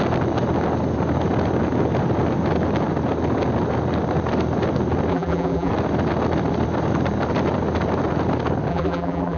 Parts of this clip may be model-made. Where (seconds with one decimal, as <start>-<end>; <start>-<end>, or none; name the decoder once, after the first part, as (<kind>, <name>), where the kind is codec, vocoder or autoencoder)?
5.1-5.7 (vocoder, BigVGAN v2); 8.7-9.4